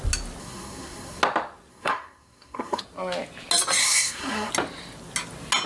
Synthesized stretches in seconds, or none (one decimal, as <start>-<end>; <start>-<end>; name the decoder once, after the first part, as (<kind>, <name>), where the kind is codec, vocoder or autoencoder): 0.4-1.2 (codec, SNAC); 1.7-2.8; 3.8-4.5